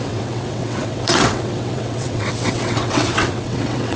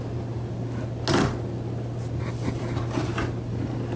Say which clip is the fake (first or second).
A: first